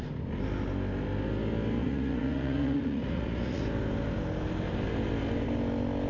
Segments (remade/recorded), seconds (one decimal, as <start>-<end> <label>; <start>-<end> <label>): 0.0-1.8 recorded; 1.8-3.6 remade; 3.6-6.1 recorded